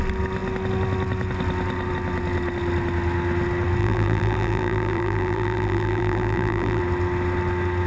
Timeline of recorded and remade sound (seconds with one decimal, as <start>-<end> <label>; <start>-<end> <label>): 0.0-3.8 recorded; 3.8-6.8 remade; 6.8-7.9 recorded